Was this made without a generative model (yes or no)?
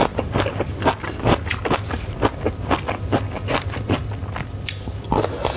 yes